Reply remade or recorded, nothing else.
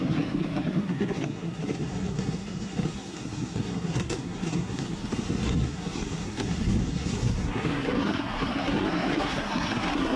remade